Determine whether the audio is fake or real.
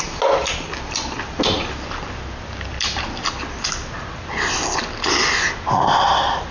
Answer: real